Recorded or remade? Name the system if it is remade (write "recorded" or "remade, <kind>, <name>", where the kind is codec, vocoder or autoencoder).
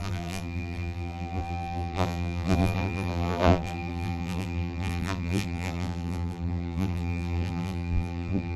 remade, vocoder, BigVGAN v2